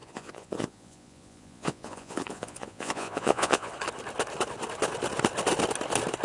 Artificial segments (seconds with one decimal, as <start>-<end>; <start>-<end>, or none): 0.0-3.7